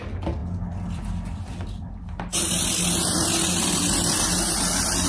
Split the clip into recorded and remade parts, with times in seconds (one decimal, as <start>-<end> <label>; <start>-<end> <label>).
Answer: 0.0-5.1 recorded